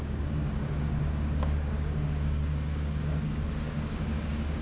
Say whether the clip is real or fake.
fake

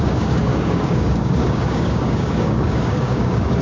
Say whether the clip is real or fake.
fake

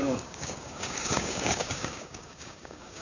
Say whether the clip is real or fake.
fake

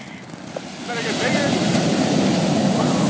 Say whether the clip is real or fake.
real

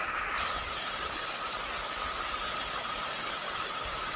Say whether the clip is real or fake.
real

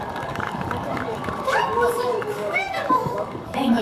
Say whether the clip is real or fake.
fake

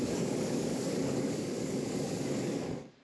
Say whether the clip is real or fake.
fake